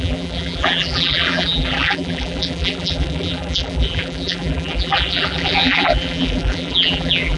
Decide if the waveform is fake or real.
fake